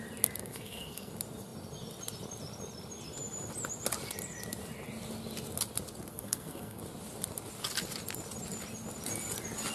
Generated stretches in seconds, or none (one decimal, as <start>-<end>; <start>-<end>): 0.4-1.1; 6.1-6.8